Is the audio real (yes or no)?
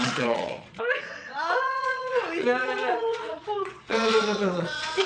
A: no